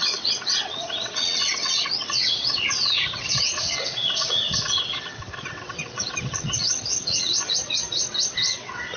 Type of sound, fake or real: fake